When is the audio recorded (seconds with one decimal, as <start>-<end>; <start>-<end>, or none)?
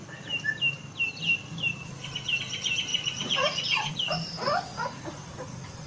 0.0-2.9; 3.9-4.7